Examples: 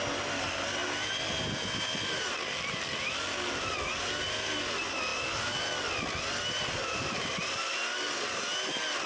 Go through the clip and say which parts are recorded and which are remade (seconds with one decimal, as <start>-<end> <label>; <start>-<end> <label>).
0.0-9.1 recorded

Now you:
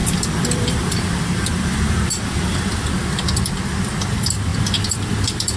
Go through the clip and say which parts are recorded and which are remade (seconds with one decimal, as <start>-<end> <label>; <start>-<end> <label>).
0.0-5.6 remade

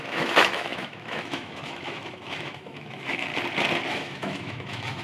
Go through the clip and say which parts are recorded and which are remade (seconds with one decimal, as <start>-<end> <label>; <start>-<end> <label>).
0.0-3.3 remade; 3.3-3.9 recorded; 3.9-5.0 remade

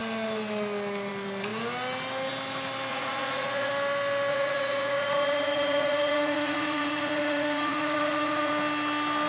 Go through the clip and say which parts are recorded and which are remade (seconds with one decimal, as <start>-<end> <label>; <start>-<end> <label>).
0.0-2.9 recorded; 2.9-3.7 remade; 3.7-4.3 recorded; 4.3-8.5 remade; 8.5-9.3 recorded

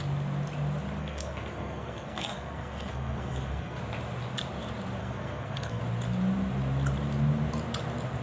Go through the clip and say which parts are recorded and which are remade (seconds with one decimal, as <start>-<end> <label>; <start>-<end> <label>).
0.0-1.0 recorded; 1.0-3.8 remade; 3.8-5.0 recorded; 5.0-5.8 remade; 5.8-8.2 recorded

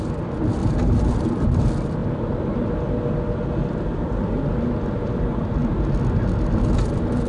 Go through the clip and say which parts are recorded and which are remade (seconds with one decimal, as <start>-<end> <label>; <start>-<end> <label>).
0.0-0.6 remade; 0.6-1.1 recorded; 1.1-2.0 remade; 2.0-4.9 recorded; 4.9-5.6 remade; 5.6-7.3 recorded